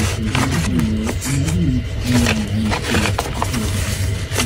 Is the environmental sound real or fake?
real